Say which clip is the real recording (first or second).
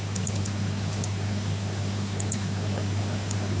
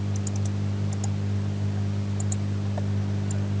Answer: second